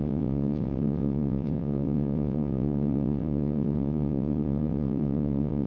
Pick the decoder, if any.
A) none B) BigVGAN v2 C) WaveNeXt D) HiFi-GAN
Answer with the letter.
C